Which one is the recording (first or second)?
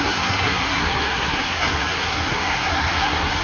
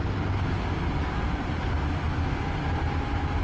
second